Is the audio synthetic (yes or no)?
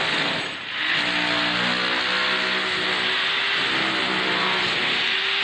no